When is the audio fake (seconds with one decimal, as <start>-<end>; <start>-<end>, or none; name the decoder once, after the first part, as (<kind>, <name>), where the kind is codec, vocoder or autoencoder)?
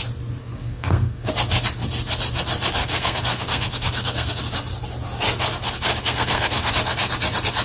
0.4-1.3 (codec, SNAC); 2.8-4.4; 6.0-6.7